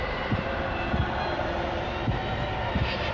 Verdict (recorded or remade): recorded